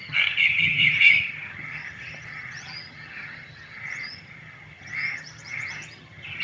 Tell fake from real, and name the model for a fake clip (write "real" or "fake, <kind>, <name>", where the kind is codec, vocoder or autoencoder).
fake, vocoder, HiFi-GAN